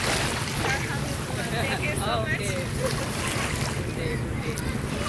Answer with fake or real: fake